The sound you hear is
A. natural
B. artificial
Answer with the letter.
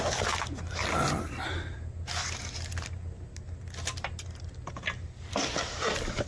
A